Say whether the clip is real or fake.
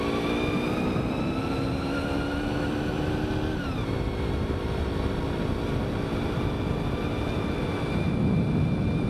real